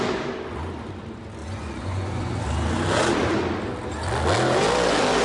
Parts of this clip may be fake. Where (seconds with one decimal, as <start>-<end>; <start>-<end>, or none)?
1.4-2.4